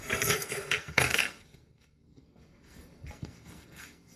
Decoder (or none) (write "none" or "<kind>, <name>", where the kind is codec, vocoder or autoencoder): codec, SNAC